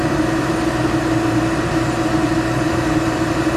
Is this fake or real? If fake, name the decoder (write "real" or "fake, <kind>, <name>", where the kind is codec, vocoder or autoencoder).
fake, vocoder, BigVGAN v2